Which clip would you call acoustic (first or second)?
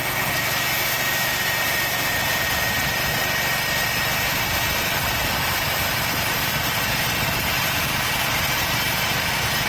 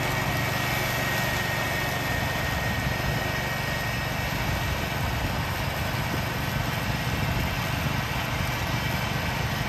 second